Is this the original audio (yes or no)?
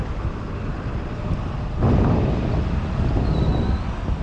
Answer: yes